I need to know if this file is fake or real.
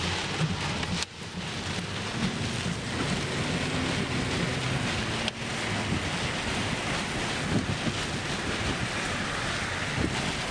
real